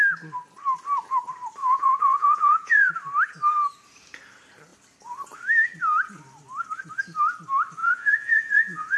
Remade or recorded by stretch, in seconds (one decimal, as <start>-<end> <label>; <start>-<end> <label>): 0.0-1.6 recorded; 1.6-2.9 remade; 2.9-7.8 recorded; 7.8-9.0 remade